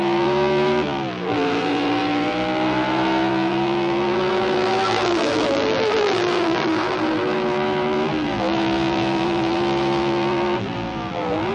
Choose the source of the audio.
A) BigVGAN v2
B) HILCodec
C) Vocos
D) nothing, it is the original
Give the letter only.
A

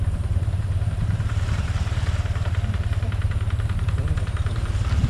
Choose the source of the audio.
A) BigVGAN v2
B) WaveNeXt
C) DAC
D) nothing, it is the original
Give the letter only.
A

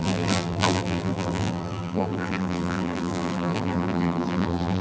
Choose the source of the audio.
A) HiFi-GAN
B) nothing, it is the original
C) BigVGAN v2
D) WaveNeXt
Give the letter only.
C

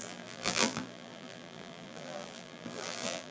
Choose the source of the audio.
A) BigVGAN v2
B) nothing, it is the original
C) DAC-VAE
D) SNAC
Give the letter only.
A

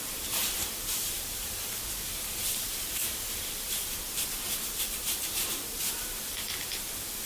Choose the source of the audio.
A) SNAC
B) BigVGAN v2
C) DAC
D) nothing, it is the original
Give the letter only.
B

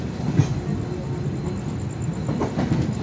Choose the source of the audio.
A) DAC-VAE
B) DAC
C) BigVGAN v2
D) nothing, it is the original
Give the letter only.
D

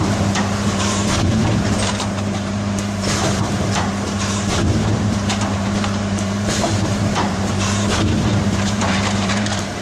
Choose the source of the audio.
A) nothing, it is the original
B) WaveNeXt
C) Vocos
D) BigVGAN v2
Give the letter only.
D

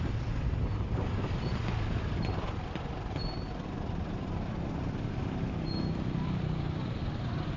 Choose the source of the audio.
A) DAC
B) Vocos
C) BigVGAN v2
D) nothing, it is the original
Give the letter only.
C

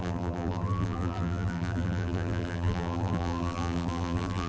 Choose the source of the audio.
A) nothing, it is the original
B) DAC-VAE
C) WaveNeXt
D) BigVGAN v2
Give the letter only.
D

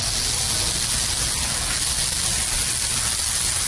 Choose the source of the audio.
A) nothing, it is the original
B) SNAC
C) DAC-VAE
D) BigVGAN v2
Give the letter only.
A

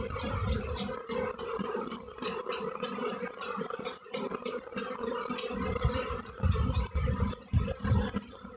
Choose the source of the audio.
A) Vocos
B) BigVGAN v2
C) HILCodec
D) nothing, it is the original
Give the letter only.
D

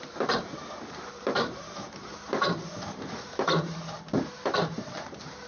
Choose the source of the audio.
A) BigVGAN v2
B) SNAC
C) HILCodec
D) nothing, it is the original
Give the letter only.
A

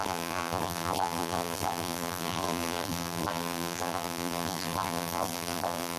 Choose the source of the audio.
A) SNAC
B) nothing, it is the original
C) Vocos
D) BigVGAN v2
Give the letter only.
D